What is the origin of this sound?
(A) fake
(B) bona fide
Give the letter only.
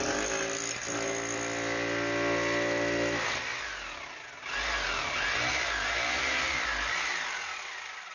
B